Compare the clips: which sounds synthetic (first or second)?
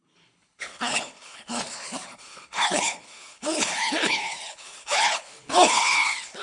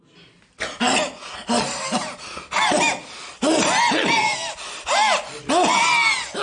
first